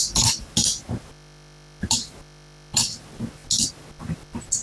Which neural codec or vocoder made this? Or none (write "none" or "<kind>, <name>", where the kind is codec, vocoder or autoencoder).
none